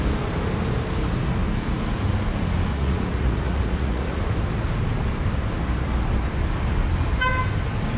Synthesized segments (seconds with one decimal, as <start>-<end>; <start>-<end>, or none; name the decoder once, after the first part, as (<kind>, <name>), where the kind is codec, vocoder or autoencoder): 2.7-4.2 (vocoder, Vocos)